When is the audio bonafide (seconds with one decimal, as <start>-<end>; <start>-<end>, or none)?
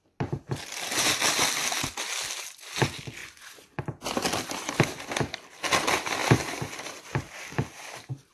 0.0-3.2; 3.8-8.3